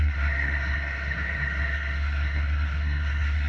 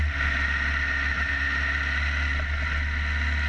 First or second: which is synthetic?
first